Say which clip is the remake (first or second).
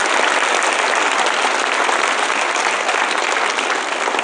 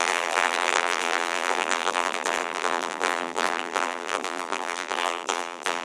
second